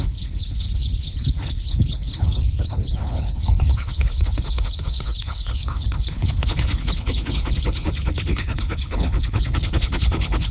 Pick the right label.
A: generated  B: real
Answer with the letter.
A